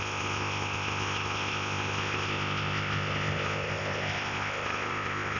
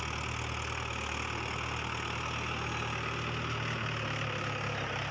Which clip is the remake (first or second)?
first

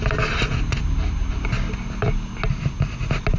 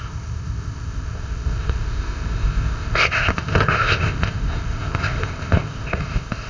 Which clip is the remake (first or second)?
second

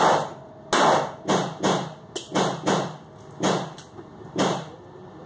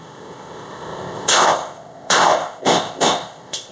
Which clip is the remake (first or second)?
second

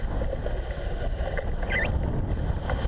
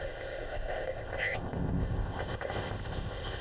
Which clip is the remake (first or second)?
second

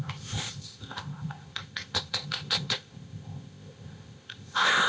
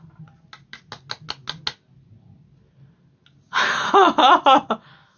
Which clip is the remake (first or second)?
first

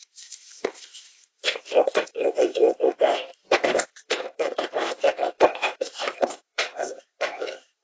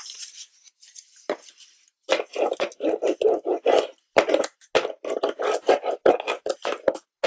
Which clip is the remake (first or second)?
first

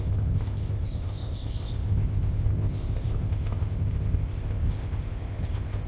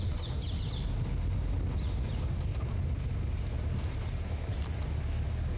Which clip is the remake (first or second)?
first